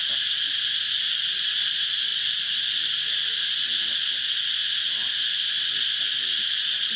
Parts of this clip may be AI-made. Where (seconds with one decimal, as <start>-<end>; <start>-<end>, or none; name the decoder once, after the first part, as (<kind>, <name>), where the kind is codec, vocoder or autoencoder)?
none